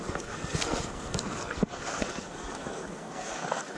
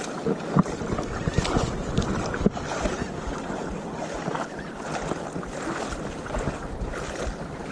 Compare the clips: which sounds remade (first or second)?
first